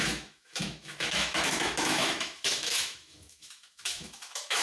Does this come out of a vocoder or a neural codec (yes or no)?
yes